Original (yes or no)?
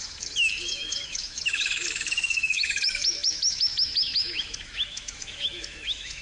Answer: no